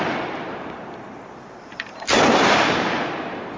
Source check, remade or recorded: remade